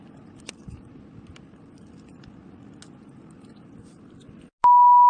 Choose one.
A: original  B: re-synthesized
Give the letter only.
A